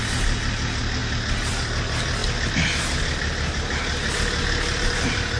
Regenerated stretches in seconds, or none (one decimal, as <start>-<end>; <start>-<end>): none